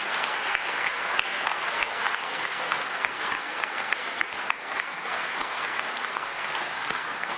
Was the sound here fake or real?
fake